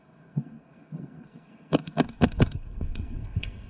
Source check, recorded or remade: remade